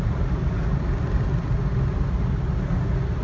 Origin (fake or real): real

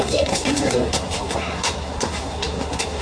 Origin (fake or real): fake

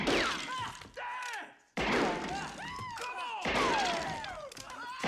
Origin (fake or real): real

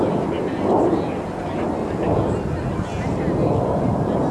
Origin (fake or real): real